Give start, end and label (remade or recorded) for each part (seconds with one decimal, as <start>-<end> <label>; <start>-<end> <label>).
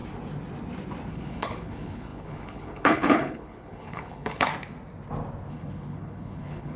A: 0.0-1.1 recorded; 1.1-4.5 remade; 4.5-5.5 recorded; 5.5-6.8 remade